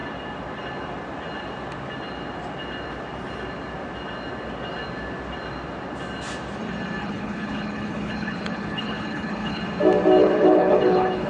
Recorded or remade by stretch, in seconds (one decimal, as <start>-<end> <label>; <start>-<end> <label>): 0.0-7.0 recorded; 7.0-9.6 remade; 9.6-10.2 recorded; 10.2-11.3 remade